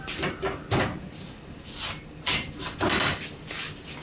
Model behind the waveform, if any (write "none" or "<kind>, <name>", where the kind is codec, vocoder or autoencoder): vocoder, BigVGAN v2